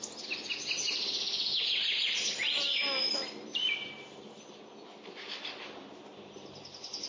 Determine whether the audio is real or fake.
real